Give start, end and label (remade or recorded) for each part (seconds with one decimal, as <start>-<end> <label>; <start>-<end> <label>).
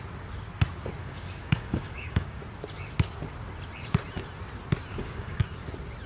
0.0-1.0 recorded; 1.0-2.4 remade; 2.4-4.9 recorded; 4.9-5.4 remade; 5.4-6.1 recorded